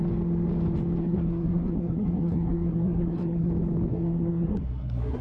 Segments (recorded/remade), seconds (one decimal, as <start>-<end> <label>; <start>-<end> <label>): 0.0-1.0 recorded; 1.0-3.5 remade; 3.5-3.9 recorded; 3.9-5.2 remade